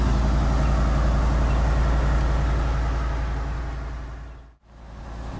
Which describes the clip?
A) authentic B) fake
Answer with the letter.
A